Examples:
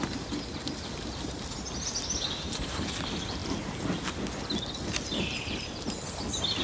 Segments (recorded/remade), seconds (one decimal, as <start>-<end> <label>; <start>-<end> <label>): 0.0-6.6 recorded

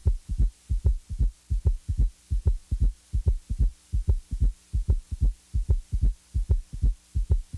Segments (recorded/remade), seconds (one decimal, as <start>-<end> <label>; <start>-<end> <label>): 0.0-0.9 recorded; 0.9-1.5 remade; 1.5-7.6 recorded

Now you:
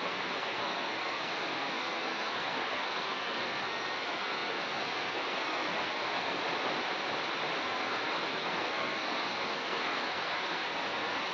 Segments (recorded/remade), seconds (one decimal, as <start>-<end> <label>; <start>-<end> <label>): 0.0-6.4 remade; 6.4-7.6 recorded; 7.6-11.3 remade

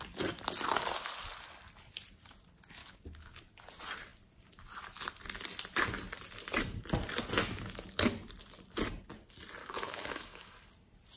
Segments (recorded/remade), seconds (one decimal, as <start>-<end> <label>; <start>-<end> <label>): 0.0-2.8 recorded; 2.8-3.4 remade; 3.4-9.6 recorded; 9.6-10.6 remade; 10.6-11.2 recorded

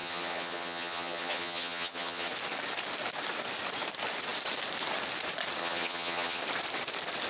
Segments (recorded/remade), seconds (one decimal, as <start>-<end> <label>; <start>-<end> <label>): 0.0-2.3 remade; 2.3-5.6 recorded; 5.6-6.4 remade; 6.4-7.3 recorded

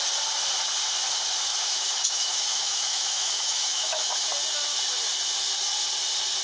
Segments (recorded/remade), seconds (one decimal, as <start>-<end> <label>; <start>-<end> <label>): 0.0-1.5 recorded; 1.5-4.1 remade; 4.1-6.4 recorded